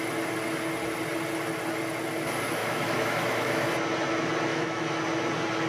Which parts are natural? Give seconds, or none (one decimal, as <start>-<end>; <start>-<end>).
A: 0.0-2.6; 3.7-4.5; 5.0-5.7